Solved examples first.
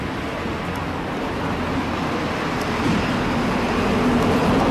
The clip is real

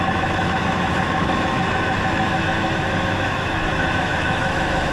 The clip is fake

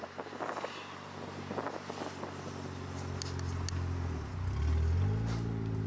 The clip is real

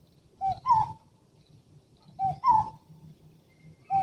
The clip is real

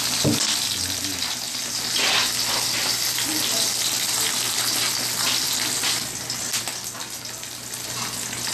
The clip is real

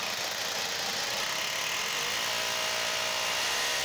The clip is real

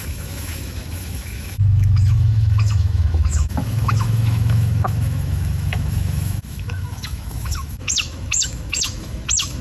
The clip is fake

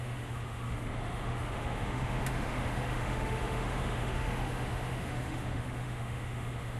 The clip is fake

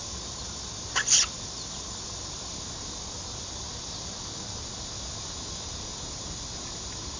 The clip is real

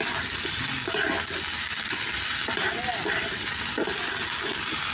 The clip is real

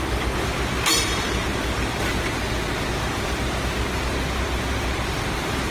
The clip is real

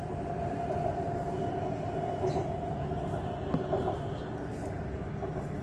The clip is real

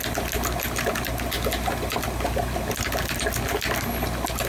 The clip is real